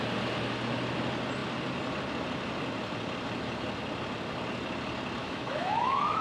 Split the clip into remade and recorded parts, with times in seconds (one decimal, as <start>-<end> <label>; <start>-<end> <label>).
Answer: 0.0-5.2 recorded; 5.2-6.2 remade